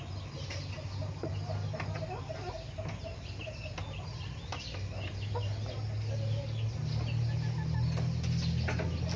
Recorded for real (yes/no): yes